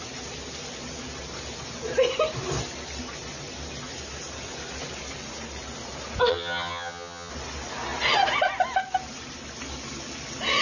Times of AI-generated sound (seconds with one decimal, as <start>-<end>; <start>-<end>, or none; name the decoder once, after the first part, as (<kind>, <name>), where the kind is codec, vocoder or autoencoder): 6.3-7.3 (vocoder, HiFi-GAN)

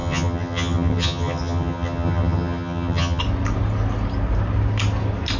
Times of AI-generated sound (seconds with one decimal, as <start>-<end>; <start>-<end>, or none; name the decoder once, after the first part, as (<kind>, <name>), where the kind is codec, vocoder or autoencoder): 0.0-3.2 (vocoder, HiFi-GAN)

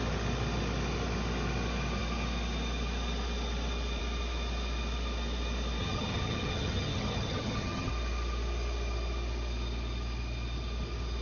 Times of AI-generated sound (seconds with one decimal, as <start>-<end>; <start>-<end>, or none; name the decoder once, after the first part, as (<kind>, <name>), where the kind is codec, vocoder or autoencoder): 5.8-7.9 (vocoder, HiFi-GAN)

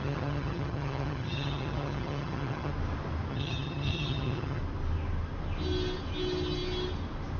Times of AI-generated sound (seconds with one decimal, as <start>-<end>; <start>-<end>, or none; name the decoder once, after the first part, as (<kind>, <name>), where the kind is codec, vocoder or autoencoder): 0.0-2.7 (vocoder, HiFi-GAN); 3.3-4.6

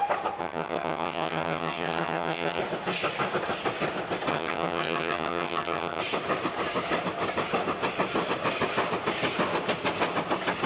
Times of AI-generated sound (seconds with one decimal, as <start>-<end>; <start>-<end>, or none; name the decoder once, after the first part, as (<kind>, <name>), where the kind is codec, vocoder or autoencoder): 0.4-2.6 (vocoder, HiFi-GAN); 4.3-6.0

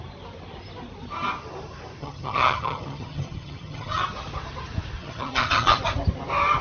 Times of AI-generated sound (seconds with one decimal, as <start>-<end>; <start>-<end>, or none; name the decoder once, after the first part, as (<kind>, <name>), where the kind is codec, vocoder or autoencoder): 2.0-4.0 (vocoder, HiFi-GAN); 5.0-5.8

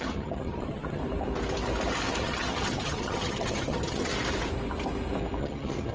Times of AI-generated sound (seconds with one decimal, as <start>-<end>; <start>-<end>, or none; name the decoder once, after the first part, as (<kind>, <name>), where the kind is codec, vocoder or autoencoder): 0.0-1.0 (vocoder, HiFi-GAN); 2.2-4.1; 5.4-5.9